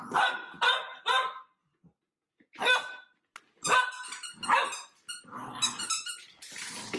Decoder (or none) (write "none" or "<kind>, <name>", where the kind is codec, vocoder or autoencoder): none